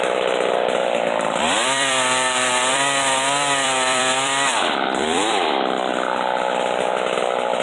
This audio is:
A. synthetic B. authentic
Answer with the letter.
A